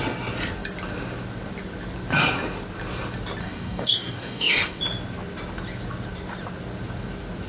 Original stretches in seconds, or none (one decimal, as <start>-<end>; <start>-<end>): 0.0-3.4; 4.8-7.5